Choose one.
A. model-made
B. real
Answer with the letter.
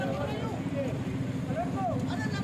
B